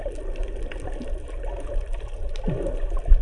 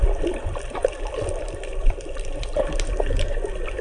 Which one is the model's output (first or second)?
second